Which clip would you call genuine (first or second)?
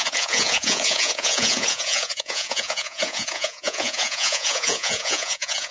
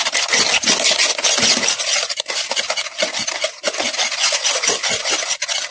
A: second